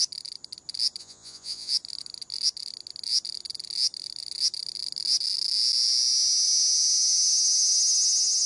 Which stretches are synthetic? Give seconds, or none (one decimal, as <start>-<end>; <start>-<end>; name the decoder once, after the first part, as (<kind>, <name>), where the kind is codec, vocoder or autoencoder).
1.0-1.7 (vocoder, Vocos)